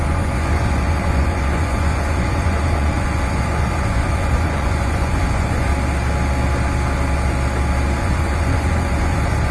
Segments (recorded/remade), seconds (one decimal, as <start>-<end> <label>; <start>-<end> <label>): 0.0-5.7 remade; 5.7-8.0 recorded; 8.0-9.5 remade

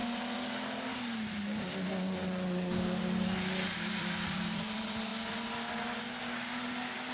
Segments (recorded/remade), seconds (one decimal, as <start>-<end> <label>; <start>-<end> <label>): 0.0-4.0 recorded; 4.0-5.1 remade; 5.1-7.1 recorded

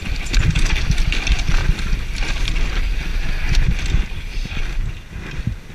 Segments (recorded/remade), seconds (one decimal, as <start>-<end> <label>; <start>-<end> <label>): 0.0-5.7 recorded

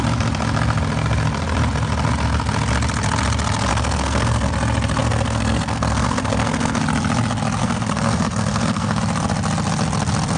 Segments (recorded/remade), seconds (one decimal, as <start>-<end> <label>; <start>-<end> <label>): 0.0-3.7 recorded; 3.7-4.5 remade; 4.5-5.0 recorded; 5.0-6.8 remade; 6.8-7.6 recorded; 7.6-9.0 remade; 9.0-10.4 recorded